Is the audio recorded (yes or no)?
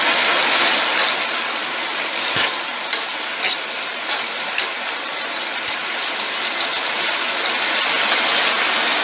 yes